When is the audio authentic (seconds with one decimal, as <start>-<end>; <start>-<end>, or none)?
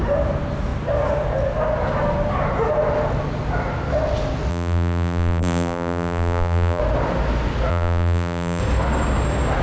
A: 0.0-4.5; 6.8-7.7; 8.6-9.6